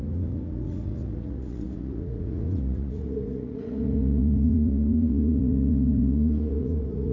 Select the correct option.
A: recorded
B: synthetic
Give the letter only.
B